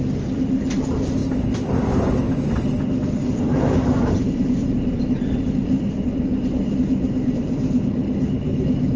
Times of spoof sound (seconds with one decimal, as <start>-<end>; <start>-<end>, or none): 3.2-5.0; 5.6-7.9